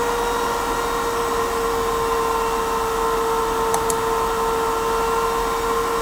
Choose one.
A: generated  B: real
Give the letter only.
A